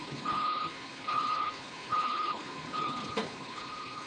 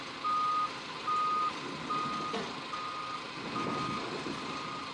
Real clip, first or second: second